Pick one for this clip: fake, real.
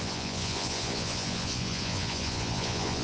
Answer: fake